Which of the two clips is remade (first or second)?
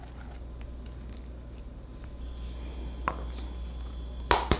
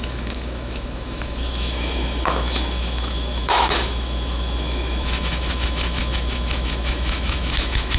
second